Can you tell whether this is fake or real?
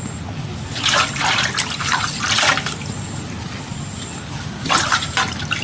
real